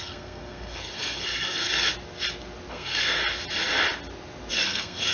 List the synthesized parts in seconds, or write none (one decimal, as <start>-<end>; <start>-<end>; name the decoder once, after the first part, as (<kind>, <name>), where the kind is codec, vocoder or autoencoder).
0.0-1.7 (codec, SNAC); 2.7-3.2; 4.5-5.1